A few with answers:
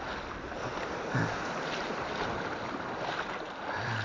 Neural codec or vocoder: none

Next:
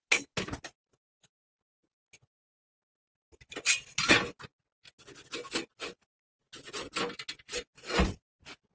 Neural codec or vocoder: none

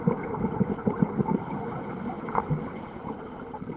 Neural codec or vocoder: none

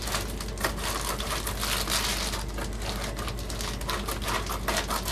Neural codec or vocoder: none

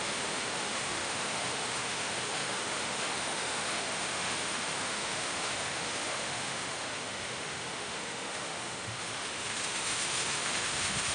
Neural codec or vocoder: autoencoder, DAC-VAE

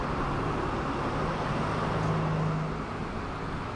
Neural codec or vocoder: none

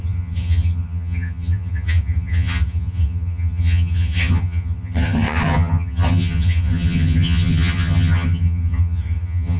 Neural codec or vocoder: vocoder, HiFi-GAN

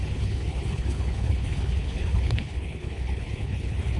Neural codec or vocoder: codec, HILCodec